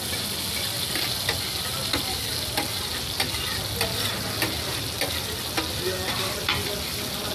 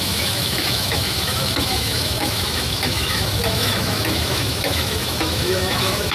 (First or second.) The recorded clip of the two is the first